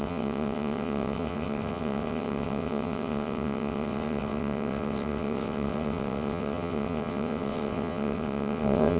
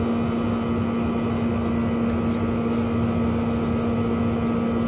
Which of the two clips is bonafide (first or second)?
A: second